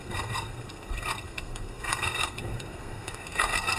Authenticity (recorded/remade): remade